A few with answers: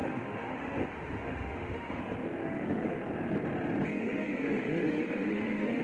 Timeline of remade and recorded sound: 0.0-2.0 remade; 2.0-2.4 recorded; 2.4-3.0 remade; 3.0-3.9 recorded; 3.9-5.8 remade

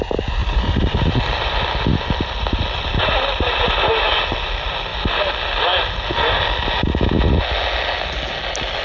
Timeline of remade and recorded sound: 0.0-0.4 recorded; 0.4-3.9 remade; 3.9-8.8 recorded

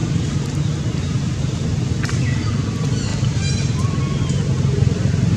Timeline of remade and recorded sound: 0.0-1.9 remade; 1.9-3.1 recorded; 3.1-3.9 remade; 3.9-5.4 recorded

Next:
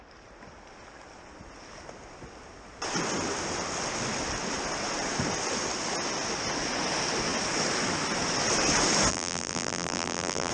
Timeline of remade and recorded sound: 0.0-9.1 recorded; 9.1-10.5 remade